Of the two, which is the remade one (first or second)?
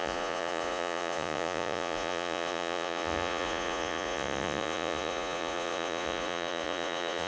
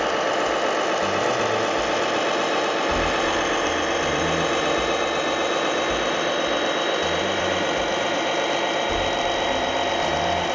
first